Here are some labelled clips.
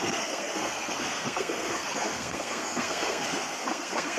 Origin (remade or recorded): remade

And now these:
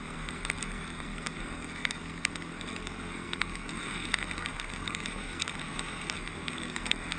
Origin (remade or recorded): remade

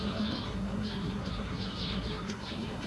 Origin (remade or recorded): remade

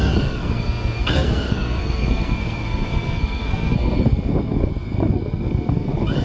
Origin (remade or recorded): remade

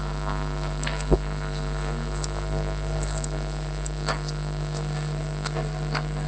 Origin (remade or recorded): remade